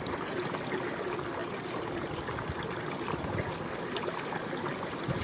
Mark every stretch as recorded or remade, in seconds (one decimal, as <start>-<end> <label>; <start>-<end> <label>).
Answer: 0.0-1.4 recorded; 1.4-2.1 remade; 2.1-5.2 recorded